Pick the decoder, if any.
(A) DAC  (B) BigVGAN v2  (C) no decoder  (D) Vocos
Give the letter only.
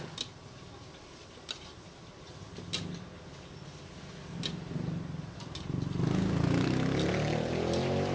C